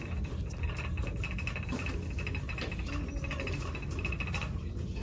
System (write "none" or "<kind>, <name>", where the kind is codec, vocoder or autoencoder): none